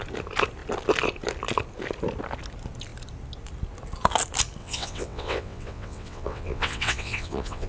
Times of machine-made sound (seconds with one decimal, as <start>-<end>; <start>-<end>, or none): 4.6-7.7